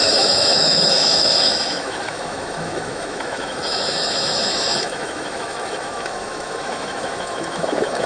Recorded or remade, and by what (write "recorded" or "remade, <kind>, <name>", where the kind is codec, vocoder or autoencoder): remade, autoencoder, DAC-VAE